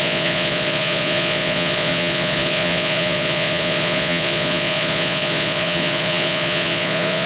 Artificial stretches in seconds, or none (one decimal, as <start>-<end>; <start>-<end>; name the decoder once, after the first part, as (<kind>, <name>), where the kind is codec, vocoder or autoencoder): 0.0-7.3 (vocoder, Vocos)